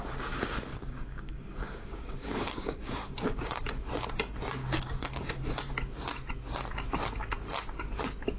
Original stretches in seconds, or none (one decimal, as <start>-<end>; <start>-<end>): 0.0-0.7; 3.6-4.6; 5.3-8.4